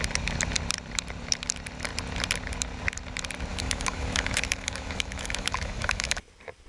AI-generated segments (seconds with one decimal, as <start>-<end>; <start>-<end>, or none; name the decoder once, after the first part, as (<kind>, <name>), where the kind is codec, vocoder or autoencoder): 3.5-6.2 (autoencoder, DAC-VAE)